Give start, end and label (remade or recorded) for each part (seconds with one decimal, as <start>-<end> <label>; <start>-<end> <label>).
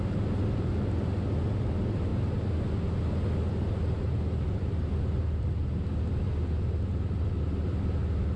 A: 0.0-8.4 recorded